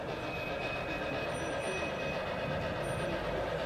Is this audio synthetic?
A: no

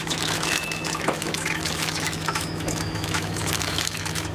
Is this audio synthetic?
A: yes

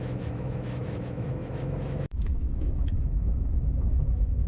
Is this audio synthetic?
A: yes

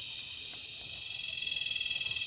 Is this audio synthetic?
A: no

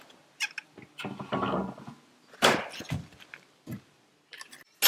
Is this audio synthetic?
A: no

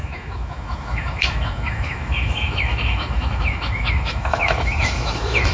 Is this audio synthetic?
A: yes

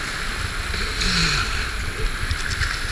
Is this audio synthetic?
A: no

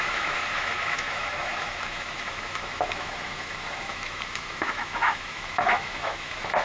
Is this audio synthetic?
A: yes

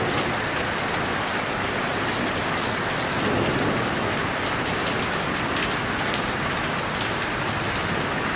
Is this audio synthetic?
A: no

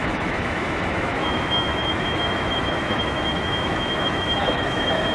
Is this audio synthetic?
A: yes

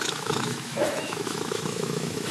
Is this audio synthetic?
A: yes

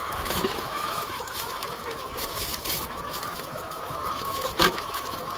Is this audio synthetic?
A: yes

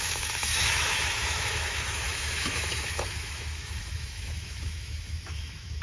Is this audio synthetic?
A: yes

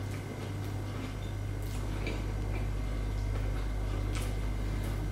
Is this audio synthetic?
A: no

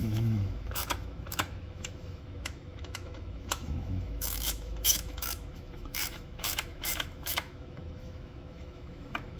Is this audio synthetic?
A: yes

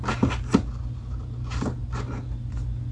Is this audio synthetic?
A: no